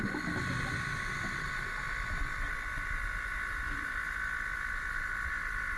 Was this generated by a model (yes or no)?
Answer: no